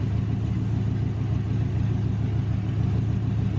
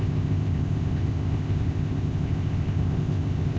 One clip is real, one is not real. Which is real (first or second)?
first